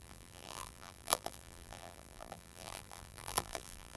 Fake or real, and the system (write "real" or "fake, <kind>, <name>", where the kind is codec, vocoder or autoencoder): fake, vocoder, BigVGAN v2